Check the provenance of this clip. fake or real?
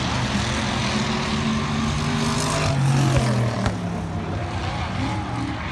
real